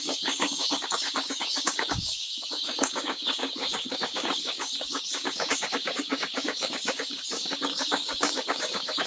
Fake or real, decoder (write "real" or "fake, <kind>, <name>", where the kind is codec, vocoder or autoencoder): fake, codec, DAC